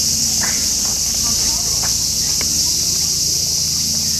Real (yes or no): yes